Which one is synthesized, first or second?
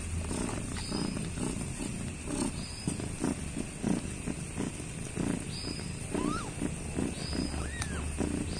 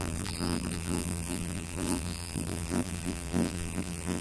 second